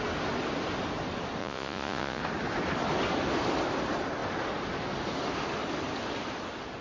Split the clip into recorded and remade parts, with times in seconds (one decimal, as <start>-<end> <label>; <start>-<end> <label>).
0.0-1.4 recorded; 1.4-2.2 remade; 2.2-6.8 recorded